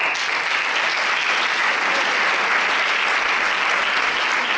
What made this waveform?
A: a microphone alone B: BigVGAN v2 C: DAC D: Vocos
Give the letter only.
A